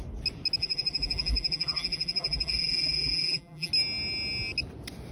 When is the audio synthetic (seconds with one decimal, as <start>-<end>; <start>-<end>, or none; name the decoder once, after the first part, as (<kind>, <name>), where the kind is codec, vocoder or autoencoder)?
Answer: 0.6-3.7 (vocoder, BigVGAN v2)